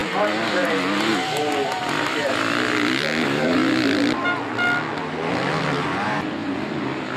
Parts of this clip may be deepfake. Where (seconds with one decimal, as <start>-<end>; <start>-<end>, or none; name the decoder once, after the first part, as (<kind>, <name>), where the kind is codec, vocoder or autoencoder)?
0.5-1.1 (vocoder, BigVGAN v2); 1.8-3.6; 5.3-7.2